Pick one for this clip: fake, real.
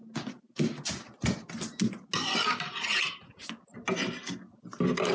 real